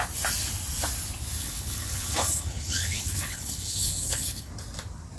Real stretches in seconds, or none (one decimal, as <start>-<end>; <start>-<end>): 0.0-1.4; 4.5-5.2